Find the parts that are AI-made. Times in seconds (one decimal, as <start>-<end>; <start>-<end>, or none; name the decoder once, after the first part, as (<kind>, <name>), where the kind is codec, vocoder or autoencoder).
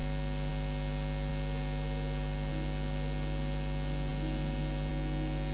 none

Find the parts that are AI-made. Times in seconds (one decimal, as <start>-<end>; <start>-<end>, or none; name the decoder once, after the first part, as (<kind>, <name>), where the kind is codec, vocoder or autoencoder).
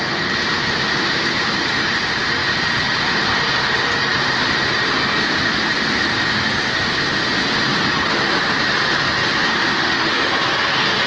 9.5-10.3 (autoencoder, DAC-VAE)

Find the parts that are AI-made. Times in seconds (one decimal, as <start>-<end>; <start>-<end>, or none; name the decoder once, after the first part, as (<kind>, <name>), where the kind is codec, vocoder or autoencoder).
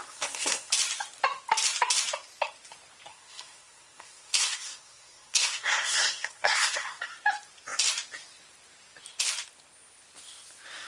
0.0-0.7 (codec, SNAC); 3.1-7.0